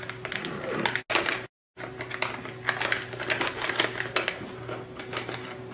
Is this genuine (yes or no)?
yes